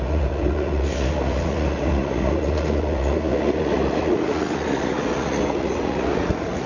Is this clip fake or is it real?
fake